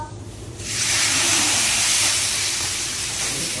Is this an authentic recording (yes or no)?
no